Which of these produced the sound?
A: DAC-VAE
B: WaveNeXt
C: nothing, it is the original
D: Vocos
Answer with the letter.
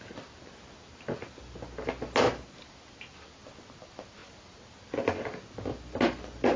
C